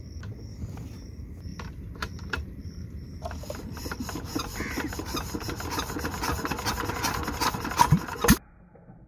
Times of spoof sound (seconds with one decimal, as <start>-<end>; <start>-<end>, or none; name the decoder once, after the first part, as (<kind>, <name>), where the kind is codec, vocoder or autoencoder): 1.5-6.7 (vocoder, BigVGAN v2)